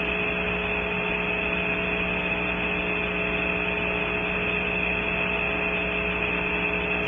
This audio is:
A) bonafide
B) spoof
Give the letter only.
A